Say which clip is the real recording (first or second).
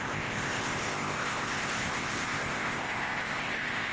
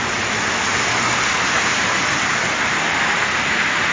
second